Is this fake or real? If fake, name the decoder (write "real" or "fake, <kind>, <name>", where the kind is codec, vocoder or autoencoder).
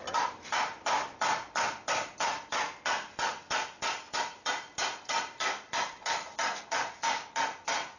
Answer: real